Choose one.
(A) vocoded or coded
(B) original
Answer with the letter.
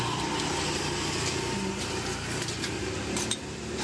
B